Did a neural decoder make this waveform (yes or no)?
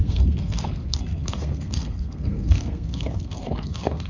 yes